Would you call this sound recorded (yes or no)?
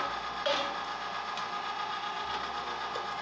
yes